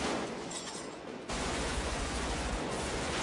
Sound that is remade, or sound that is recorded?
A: remade